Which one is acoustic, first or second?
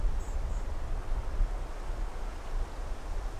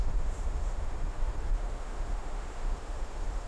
first